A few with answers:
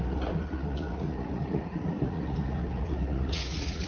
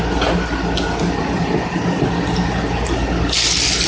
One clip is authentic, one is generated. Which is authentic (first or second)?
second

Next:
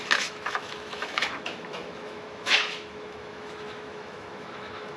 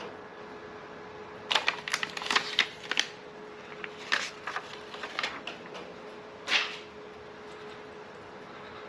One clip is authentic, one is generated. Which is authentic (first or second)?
second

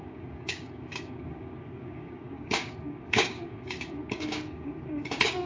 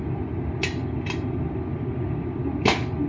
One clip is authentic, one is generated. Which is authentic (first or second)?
second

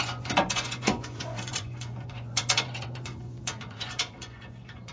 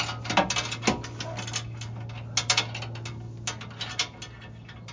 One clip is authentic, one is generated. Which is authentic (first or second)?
second